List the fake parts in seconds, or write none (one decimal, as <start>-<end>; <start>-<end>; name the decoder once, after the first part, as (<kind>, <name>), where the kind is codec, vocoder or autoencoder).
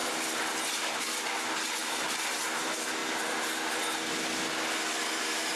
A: 1.8-2.4 (vocoder, BigVGAN v2)